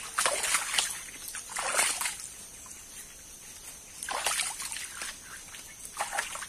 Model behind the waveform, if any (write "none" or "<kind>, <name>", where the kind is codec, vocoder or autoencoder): none